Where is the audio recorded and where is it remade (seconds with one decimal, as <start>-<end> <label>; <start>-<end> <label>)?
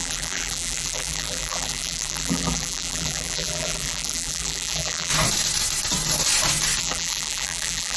0.0-5.1 remade; 5.1-6.8 recorded; 6.8-8.0 remade